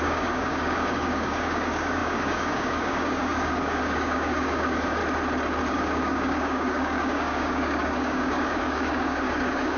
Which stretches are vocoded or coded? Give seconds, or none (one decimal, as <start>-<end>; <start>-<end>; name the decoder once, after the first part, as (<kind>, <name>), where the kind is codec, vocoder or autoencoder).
0.0-5.0 (codec, DAC); 5.7-9.8